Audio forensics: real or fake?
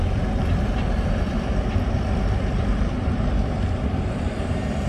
fake